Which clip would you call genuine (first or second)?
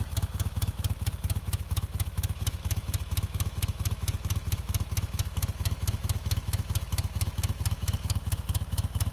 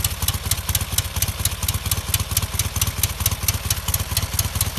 second